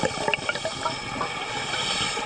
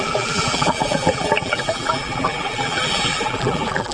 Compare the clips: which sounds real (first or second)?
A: first